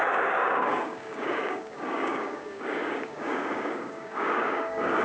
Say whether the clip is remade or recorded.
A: remade